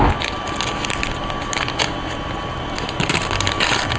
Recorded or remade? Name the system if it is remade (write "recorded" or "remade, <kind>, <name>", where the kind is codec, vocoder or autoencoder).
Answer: recorded